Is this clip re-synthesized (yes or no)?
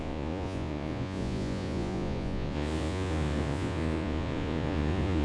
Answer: yes